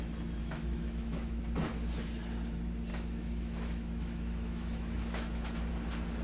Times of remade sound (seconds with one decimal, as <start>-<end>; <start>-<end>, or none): 0.4-1.4; 2.9-5.7